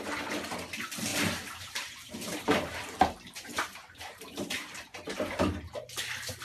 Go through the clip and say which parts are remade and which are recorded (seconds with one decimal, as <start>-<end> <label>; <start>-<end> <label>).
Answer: 0.0-1.1 recorded; 1.1-4.9 remade; 4.9-6.4 recorded